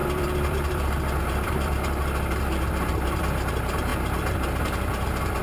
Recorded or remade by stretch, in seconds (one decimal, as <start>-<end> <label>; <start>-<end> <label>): 0.0-3.2 remade; 3.2-5.4 recorded